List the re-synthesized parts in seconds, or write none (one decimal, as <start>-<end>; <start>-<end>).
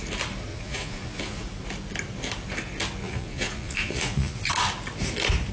0.5-1.4; 3.0-4.5